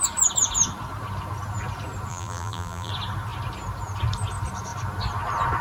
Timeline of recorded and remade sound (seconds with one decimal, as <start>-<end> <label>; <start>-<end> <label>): 0.0-2.1 recorded; 2.1-2.9 remade; 2.9-5.6 recorded